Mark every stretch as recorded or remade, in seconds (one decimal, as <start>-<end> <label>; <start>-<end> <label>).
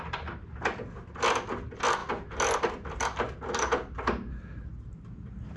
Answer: 0.0-5.6 recorded